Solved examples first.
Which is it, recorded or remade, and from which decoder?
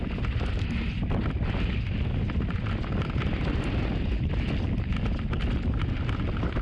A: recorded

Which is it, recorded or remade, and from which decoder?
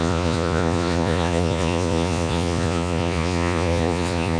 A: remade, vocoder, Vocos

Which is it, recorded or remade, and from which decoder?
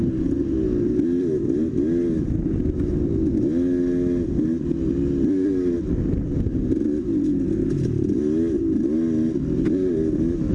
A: recorded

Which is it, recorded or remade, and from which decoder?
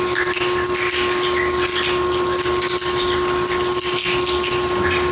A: recorded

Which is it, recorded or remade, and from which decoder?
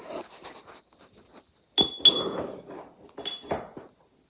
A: recorded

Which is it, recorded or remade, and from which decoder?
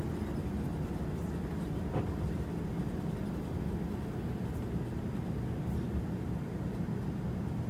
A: recorded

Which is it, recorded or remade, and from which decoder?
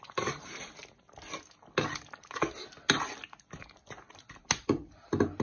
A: recorded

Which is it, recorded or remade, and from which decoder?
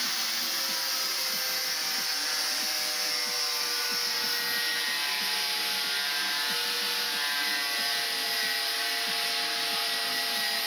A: recorded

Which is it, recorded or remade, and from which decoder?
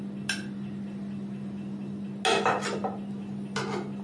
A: recorded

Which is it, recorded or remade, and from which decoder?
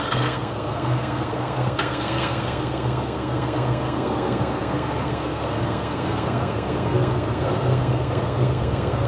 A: remade, codec, SNAC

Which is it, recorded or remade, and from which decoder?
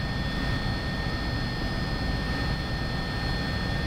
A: recorded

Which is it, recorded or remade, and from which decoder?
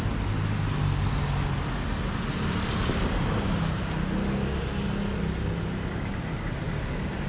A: recorded